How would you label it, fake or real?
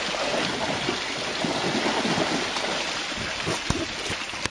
real